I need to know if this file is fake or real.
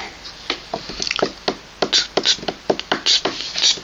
real